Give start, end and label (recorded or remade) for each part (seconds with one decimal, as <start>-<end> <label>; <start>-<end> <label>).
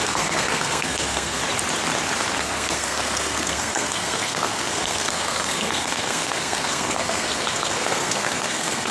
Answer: 0.0-1.4 remade; 1.4-2.4 recorded; 2.4-8.9 remade